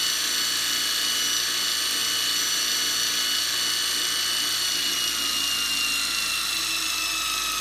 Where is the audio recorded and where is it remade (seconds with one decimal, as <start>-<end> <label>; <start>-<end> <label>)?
0.0-7.6 recorded